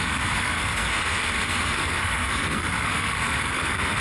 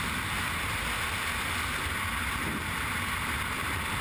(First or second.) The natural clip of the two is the second